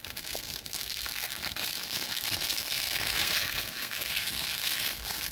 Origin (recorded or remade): remade